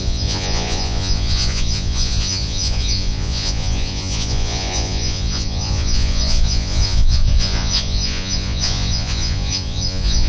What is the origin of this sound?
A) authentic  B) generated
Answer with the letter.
B